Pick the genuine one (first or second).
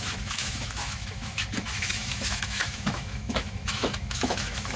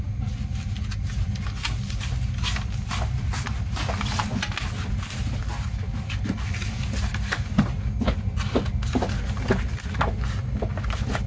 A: second